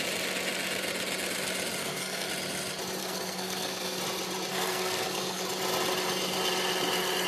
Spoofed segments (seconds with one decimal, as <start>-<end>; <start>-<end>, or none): 1.8-2.3; 3.0-4.0; 4.5-5.4